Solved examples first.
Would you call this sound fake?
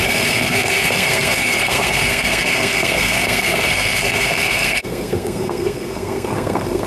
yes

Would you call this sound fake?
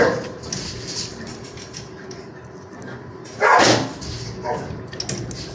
no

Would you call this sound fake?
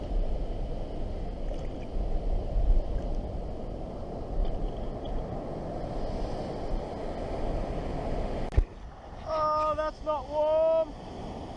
no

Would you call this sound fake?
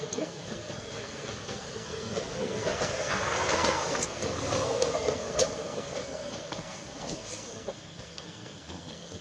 yes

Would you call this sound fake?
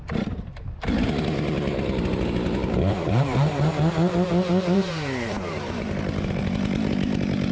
yes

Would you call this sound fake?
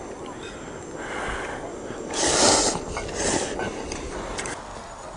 no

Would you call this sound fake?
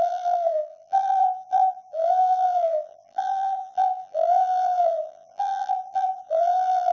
yes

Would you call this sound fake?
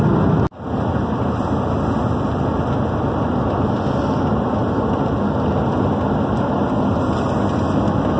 no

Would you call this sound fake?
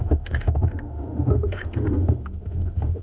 yes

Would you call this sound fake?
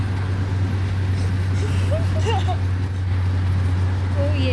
no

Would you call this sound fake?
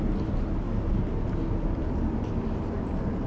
no